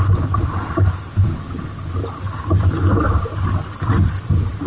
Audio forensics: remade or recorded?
recorded